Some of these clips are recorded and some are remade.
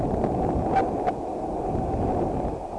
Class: recorded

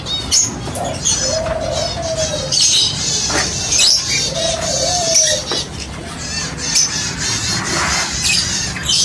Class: recorded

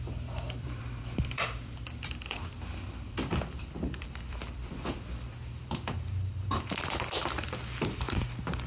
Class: remade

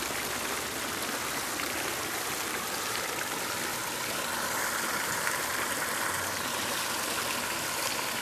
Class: recorded